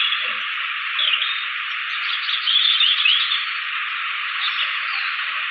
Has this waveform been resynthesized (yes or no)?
no